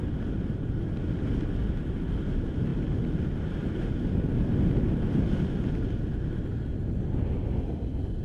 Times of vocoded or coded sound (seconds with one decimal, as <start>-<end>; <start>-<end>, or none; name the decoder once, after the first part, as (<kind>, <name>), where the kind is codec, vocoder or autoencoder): none